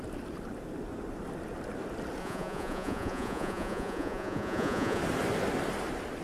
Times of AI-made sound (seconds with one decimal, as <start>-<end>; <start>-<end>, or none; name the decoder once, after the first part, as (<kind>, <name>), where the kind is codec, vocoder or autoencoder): 2.2-5.0 (vocoder, Vocos)